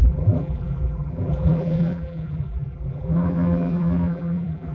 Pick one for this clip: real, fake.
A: fake